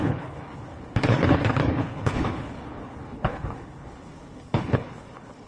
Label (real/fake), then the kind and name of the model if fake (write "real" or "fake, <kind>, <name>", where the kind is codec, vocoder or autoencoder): fake, codec, HILCodec